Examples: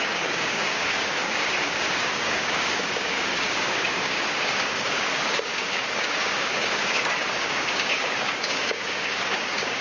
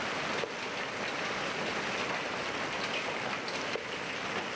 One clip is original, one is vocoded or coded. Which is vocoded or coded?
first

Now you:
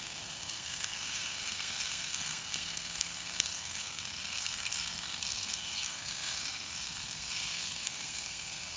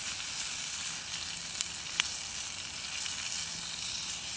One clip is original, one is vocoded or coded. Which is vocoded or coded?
first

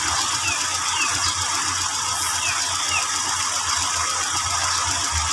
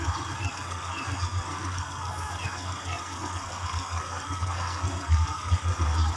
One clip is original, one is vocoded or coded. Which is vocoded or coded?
second